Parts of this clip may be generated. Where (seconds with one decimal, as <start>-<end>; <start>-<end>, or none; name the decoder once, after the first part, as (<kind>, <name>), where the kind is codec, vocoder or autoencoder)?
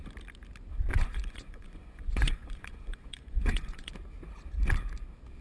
0.9-3.9 (vocoder, Vocos)